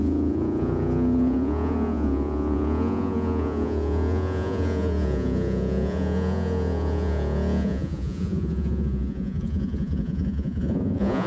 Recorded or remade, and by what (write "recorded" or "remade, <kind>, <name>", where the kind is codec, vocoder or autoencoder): remade, vocoder, Vocos